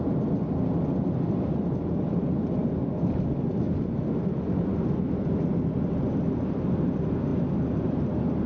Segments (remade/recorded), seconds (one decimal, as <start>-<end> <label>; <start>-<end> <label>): 0.0-7.3 remade; 7.3-8.5 recorded